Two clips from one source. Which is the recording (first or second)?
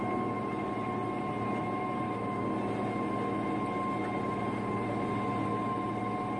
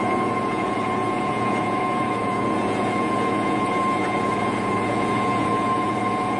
first